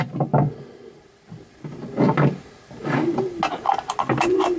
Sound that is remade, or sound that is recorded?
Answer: recorded